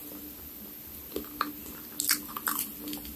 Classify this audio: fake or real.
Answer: real